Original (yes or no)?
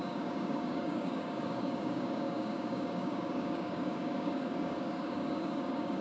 no